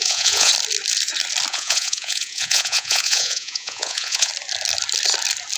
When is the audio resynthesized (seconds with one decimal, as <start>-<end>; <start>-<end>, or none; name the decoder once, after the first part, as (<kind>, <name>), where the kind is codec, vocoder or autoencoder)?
0.0-0.5 (vocoder, Vocos); 1.5-4.3